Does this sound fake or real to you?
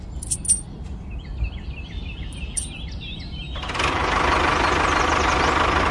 real